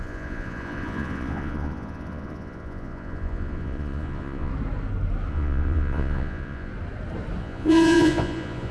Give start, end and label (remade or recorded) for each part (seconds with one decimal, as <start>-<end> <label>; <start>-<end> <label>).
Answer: 0.0-4.5 remade; 4.5-5.3 recorded; 5.3-6.7 remade; 6.7-7.4 recorded; 7.4-8.7 remade